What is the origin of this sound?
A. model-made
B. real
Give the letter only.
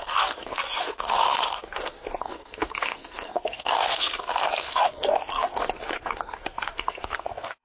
A